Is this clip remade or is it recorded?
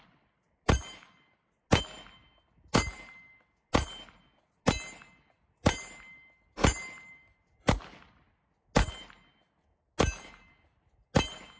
recorded